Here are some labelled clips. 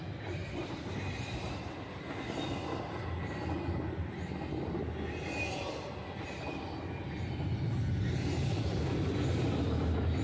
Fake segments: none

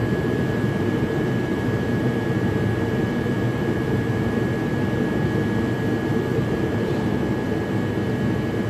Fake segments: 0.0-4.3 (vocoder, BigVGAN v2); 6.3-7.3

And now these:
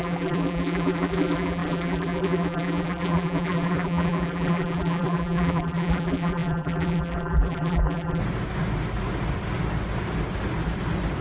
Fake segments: 0.0-8.2 (vocoder, BigVGAN v2)

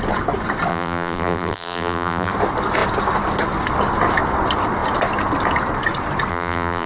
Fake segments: 0.7-2.3 (vocoder, BigVGAN v2); 6.3-6.9